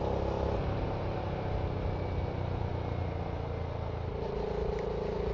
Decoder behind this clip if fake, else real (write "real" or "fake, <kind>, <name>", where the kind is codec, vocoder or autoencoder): real